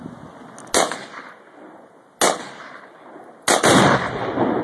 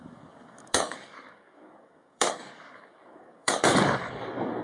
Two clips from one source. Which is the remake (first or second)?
second